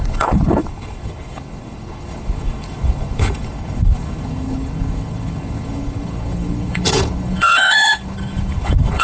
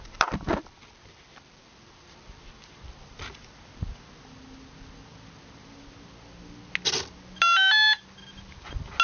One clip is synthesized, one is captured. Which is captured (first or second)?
second